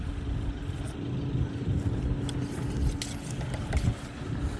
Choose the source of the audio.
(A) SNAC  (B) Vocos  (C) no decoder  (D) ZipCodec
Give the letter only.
C